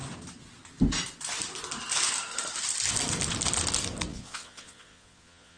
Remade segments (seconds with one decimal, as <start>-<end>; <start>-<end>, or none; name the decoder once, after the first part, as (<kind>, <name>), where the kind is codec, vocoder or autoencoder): 4.1-5.6 (vocoder, Vocos)